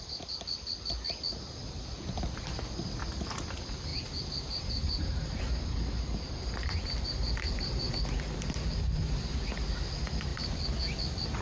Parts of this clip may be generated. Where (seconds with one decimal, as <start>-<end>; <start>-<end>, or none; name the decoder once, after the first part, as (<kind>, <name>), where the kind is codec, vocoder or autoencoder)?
3.9-7.9 (vocoder, BigVGAN v2)